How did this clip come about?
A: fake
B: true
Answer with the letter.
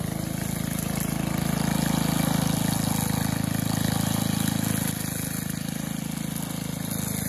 B